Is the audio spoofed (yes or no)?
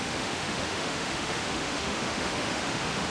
yes